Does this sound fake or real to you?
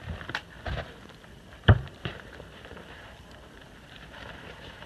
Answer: fake